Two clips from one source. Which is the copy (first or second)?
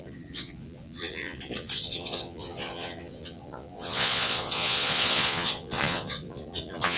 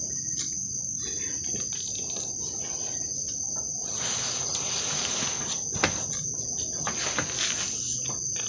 first